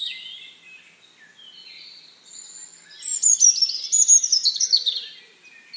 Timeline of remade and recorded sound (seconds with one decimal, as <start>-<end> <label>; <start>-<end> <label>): 0.0-5.8 recorded